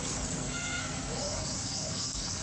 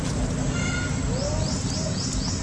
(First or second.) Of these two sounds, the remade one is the first